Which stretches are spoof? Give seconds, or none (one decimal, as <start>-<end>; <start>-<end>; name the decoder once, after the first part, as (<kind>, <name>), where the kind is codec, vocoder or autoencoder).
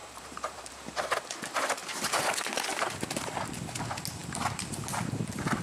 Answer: 0.0-0.7 (vocoder, BigVGAN v2); 1.8-2.5